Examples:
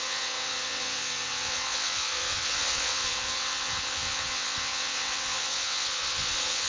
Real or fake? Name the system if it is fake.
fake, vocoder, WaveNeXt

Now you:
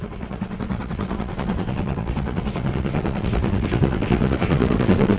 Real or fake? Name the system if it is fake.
fake, vocoder, WaveNeXt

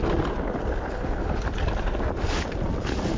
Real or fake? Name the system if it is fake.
real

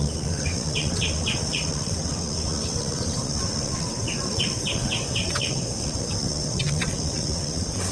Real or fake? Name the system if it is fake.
fake, vocoder, WaveNeXt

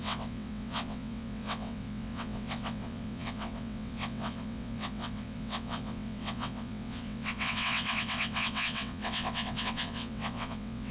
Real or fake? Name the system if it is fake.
fake, vocoder, WaveNeXt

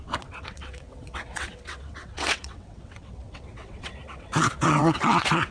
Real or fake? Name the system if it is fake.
fake, vocoder, WaveNeXt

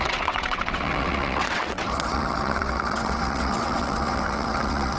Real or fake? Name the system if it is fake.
fake, vocoder, WaveNeXt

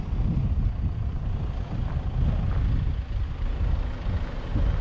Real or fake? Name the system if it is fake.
real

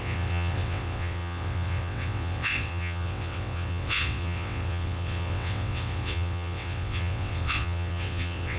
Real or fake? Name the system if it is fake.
fake, vocoder, WaveNeXt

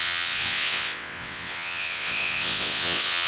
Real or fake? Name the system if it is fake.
fake, vocoder, WaveNeXt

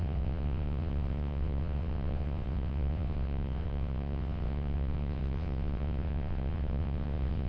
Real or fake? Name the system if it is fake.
fake, vocoder, WaveNeXt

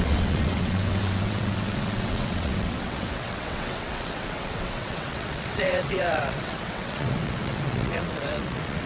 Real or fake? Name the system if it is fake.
fake, vocoder, WaveNeXt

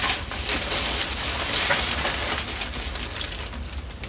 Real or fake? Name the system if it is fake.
real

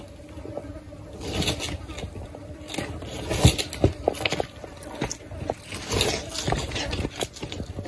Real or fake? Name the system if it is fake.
real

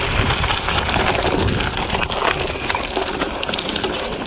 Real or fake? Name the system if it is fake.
real